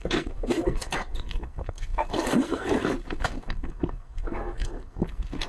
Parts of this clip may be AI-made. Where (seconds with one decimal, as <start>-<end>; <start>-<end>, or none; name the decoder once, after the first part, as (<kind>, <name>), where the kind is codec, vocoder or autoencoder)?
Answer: 0.0-5.5 (codec, SNAC)